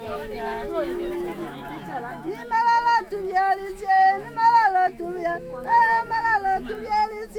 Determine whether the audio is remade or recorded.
remade